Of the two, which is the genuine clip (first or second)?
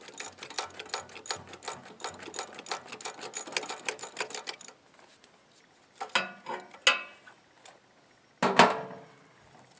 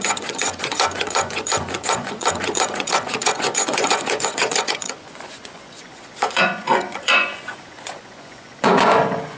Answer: first